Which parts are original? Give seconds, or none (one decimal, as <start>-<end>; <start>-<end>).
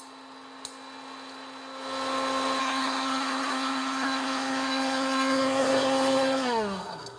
0.0-2.6